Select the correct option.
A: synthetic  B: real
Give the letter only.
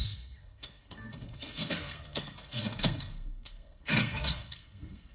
A